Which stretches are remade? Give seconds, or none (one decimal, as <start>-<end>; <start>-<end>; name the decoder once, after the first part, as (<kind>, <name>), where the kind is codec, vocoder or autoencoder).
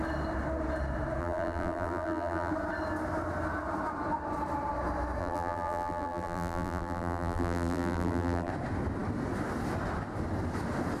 1.2-2.5 (vocoder, BigVGAN v2); 5.2-8.5